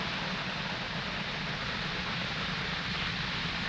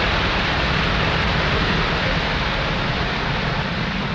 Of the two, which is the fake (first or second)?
second